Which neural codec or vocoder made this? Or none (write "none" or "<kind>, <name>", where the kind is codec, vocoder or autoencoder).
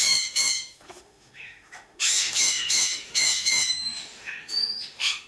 autoencoder, DAC-VAE